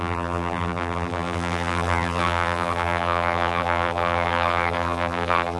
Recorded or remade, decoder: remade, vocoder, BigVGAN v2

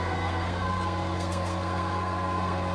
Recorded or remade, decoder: remade, codec, SNAC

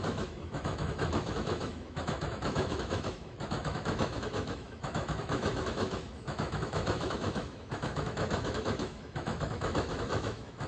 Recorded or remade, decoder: remade, autoencoder, DAC-VAE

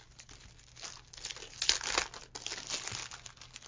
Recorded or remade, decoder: recorded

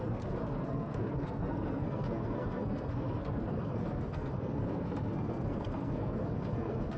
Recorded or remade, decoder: remade, codec, SNAC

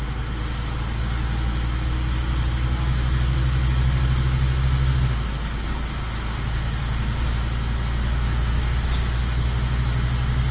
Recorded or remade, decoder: recorded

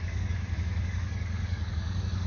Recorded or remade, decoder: remade, codec, DAC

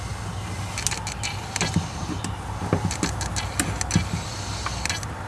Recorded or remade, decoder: recorded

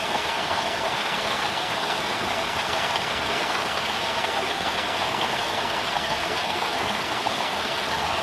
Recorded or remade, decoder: remade, codec, SNAC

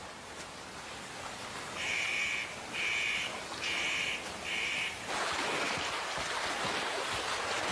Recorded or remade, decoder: recorded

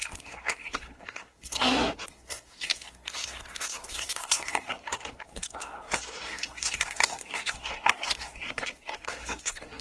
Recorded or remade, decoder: remade, codec, SNAC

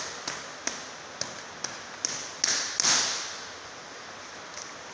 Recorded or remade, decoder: recorded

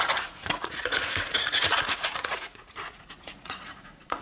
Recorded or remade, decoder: remade, vocoder, Vocos